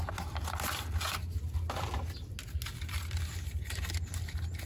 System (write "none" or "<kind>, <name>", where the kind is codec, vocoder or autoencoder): none